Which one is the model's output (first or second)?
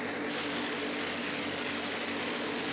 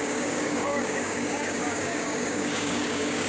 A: second